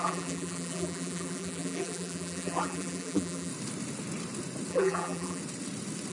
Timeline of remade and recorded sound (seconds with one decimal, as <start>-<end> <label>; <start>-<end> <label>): 0.0-3.5 remade; 3.5-4.7 recorded; 4.7-5.4 remade; 5.4-6.1 recorded